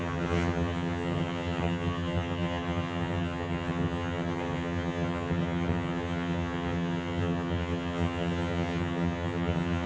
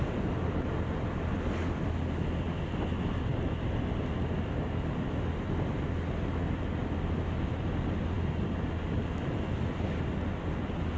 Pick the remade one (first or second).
first